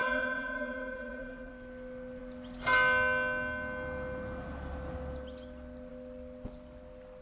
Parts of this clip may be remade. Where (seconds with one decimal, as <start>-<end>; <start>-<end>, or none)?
0.0-1.5